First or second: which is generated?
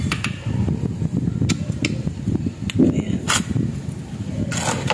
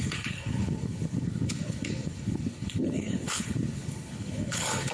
second